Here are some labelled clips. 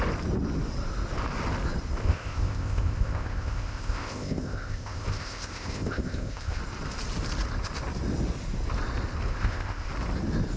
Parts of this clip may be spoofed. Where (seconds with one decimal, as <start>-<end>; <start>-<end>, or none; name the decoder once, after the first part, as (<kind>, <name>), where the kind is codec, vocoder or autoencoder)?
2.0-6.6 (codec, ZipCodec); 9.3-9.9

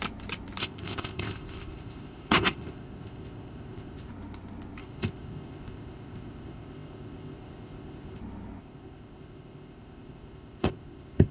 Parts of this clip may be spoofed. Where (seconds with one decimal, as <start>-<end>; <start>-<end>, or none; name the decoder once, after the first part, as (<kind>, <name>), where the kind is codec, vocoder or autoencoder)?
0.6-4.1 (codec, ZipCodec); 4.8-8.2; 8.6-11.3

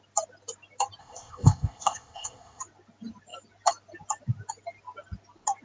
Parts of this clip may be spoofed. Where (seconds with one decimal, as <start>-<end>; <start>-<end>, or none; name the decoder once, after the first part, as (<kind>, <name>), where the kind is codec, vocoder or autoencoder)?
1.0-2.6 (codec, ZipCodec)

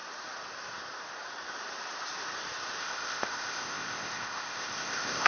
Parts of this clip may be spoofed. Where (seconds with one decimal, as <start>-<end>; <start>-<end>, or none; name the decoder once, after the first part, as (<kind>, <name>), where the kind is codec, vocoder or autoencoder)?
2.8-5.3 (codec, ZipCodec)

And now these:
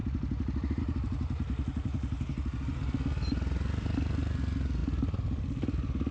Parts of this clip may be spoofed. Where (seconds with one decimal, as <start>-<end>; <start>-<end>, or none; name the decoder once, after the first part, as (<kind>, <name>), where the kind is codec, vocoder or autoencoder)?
none